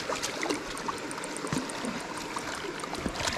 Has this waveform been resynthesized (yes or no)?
no